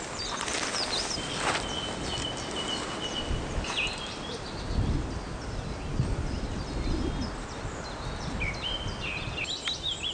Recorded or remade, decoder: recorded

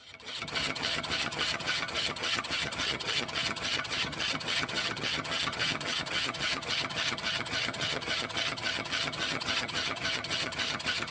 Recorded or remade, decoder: remade, vocoder, HiFi-GAN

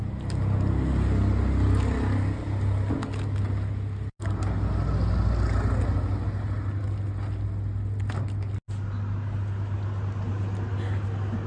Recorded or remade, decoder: recorded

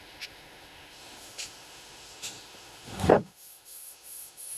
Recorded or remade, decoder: remade, autoencoder, DAC-VAE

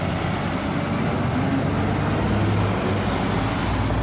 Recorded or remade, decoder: recorded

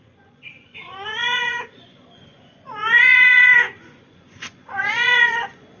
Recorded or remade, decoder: remade, vocoder, Vocos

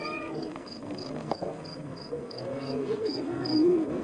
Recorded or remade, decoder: remade, codec, SNAC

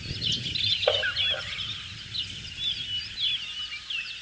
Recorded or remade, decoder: recorded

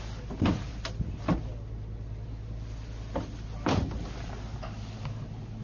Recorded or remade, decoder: recorded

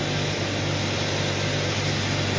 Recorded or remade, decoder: recorded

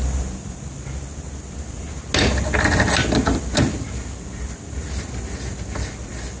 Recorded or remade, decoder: recorded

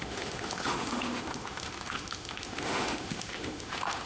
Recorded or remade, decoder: remade, autoencoder, DAC-VAE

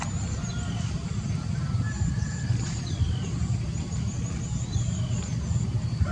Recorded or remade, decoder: recorded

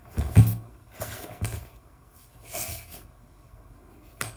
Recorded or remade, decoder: remade, codec, SNAC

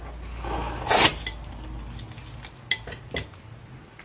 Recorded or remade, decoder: recorded